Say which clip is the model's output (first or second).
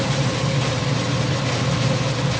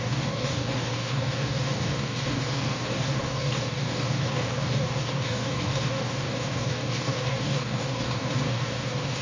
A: second